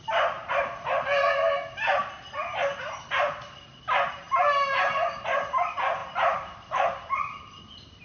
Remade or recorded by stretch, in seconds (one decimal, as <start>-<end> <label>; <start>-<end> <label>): 0.0-6.0 recorded; 6.0-7.6 remade; 7.6-8.0 recorded